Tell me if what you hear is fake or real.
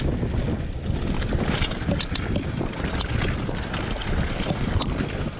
real